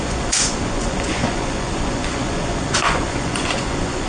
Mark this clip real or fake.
fake